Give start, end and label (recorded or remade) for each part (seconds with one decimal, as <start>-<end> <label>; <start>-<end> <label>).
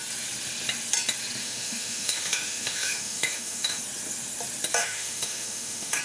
0.0-1.4 recorded; 1.4-3.8 remade; 3.8-4.8 recorded; 4.8-6.0 remade